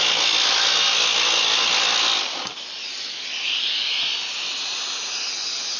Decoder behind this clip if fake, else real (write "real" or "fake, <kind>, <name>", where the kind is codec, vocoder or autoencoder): real